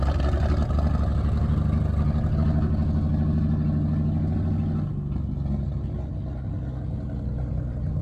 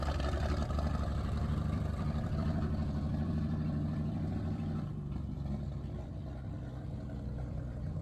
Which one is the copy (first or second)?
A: second